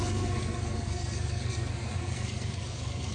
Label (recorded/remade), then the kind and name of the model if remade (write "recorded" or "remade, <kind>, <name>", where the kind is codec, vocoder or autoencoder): remade, codec, SNAC